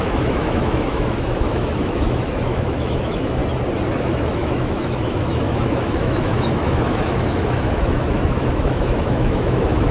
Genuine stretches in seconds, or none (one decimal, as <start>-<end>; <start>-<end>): 3.4-4.0